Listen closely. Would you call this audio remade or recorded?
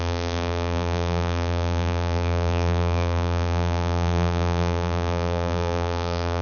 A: remade